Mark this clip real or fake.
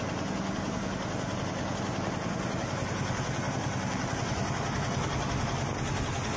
real